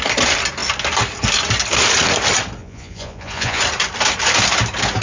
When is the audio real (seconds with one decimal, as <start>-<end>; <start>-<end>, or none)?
0.0-2.6; 3.6-5.0